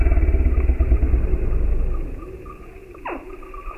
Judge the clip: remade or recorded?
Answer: recorded